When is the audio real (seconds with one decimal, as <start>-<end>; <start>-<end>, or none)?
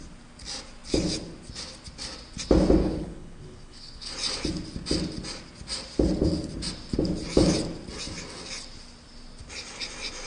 0.0-2.8; 4.1-10.3